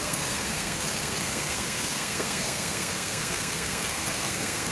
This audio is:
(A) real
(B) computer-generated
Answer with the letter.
B